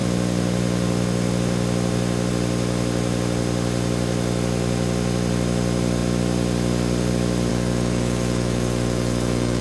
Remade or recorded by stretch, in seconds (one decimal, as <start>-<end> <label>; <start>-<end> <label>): 0.0-7.5 recorded; 7.5-9.6 remade